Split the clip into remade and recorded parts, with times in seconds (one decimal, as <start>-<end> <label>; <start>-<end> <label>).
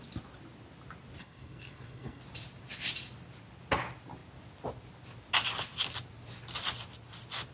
0.0-1.2 recorded; 1.2-2.2 remade; 2.2-7.5 recorded